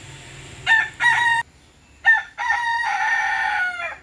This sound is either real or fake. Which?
real